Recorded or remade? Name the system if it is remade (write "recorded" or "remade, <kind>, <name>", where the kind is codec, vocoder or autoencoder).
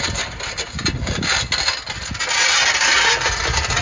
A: recorded